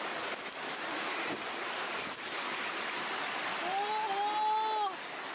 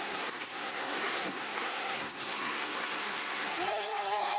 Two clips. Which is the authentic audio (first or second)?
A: first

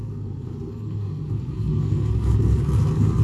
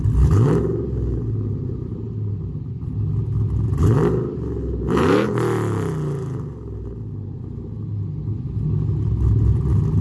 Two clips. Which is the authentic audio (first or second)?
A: second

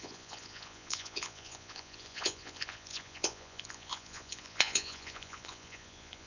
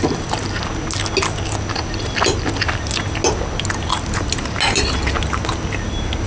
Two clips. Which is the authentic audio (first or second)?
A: second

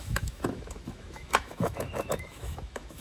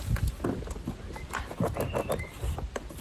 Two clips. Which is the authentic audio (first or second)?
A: second